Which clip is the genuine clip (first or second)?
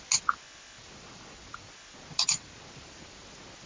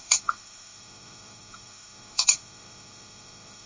first